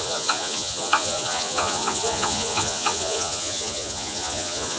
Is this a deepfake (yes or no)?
yes